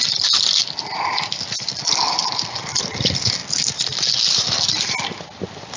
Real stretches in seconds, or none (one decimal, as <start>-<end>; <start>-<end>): 0.0-5.8